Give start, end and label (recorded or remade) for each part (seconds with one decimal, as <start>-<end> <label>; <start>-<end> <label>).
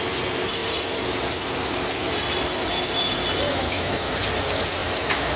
0.0-3.5 recorded; 3.5-4.1 remade; 4.1-5.4 recorded